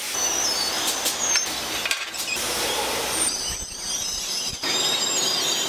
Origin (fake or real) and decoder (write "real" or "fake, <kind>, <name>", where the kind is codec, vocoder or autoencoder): fake, vocoder, BigVGAN v2